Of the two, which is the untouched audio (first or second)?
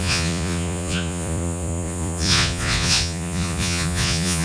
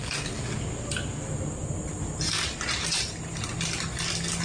second